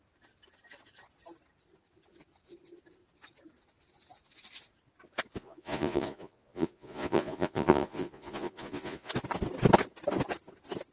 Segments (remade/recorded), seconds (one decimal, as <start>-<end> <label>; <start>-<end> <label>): 0.0-5.4 recorded; 5.4-9.1 remade; 9.1-10.9 recorded